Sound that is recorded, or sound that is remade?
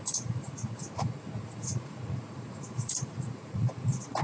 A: remade